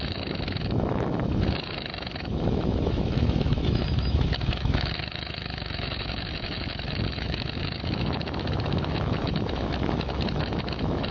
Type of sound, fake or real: fake